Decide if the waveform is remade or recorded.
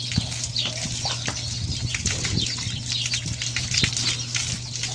recorded